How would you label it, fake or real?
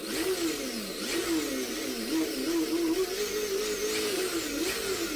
real